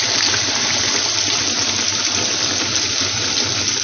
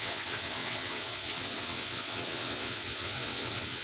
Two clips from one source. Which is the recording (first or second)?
first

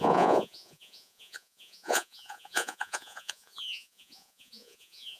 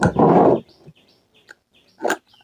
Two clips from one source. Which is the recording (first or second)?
second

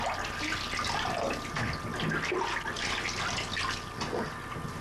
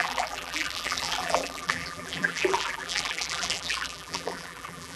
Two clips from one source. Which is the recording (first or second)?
first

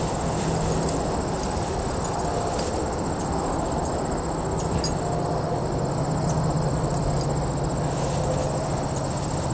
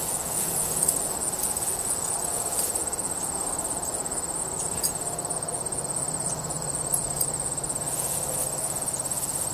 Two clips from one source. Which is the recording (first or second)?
first